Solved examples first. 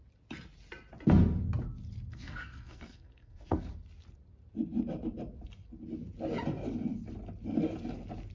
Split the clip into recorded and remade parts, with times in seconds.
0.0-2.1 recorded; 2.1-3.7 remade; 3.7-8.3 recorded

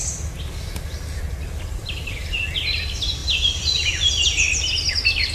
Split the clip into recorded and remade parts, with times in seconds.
0.0-1.8 recorded; 1.8-2.6 remade; 2.6-3.2 recorded; 3.2-3.9 remade; 3.9-5.3 recorded

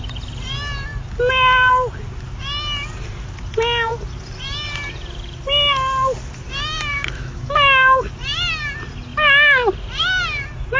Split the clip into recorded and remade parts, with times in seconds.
0.0-6.9 recorded; 6.9-8.1 remade; 8.1-10.8 recorded

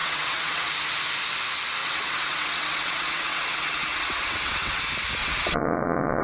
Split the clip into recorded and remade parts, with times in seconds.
0.0-0.7 remade; 0.7-1.8 recorded; 1.8-4.8 remade; 4.8-5.2 recorded; 5.2-6.2 remade

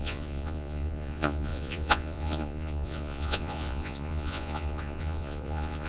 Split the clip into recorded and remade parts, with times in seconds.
0.0-5.9 remade

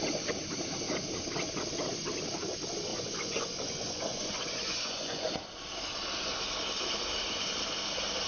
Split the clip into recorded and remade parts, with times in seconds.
0.0-2.9 recorded; 2.9-5.3 remade; 5.3-8.3 recorded